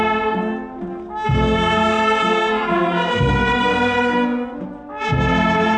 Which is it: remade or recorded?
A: recorded